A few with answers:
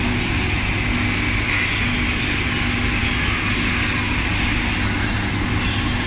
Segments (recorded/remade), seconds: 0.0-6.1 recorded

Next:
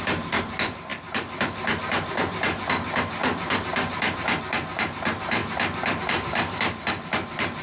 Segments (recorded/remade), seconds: 0.0-5.4 remade; 5.4-6.0 recorded; 6.0-7.6 remade

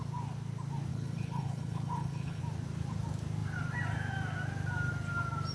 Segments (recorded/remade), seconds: 0.0-0.9 recorded; 0.9-2.4 remade; 2.4-5.5 recorded

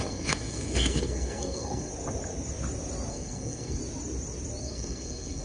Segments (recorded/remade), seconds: 0.0-1.9 remade; 1.9-3.1 recorded; 3.1-3.8 remade; 3.8-4.6 recorded; 4.6-5.4 remade

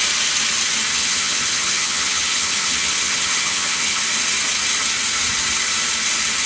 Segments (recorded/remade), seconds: 0.0-0.9 recorded; 0.9-4.0 remade; 4.0-6.5 recorded

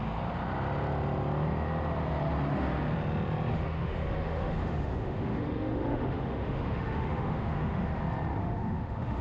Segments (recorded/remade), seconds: 0.0-3.5 recorded; 3.5-8.0 remade; 8.0-8.4 recorded; 8.4-9.2 remade

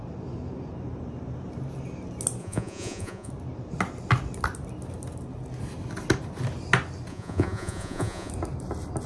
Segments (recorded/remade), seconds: 0.0-2.4 recorded; 2.4-3.3 remade; 3.3-7.1 recorded; 7.1-8.3 remade; 8.3-9.1 recorded